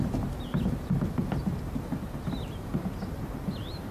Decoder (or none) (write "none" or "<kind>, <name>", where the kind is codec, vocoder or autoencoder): none